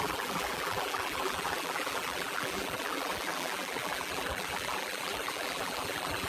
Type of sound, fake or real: fake